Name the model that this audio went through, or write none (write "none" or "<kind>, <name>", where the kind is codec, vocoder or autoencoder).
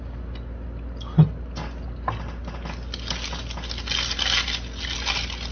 none